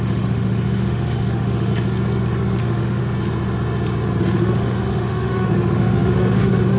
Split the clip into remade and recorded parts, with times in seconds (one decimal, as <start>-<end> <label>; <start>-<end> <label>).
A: 0.0-1.7 remade; 1.7-2.6 recorded; 2.6-3.0 remade; 3.0-4.2 recorded; 4.2-6.8 remade